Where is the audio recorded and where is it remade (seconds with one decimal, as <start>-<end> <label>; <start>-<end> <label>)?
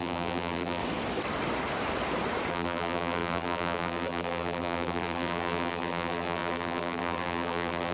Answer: 0.0-0.8 remade; 0.8-2.5 recorded; 2.5-7.9 remade